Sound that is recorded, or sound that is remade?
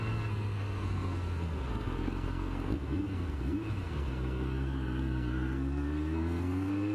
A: remade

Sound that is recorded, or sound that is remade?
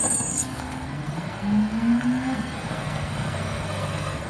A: remade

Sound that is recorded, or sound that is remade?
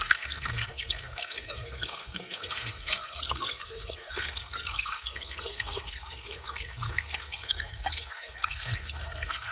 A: remade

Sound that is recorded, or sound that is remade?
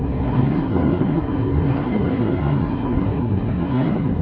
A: remade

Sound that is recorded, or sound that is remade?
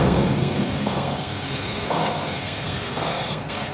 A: remade